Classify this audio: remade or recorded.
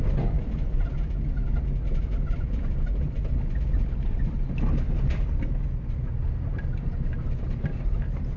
recorded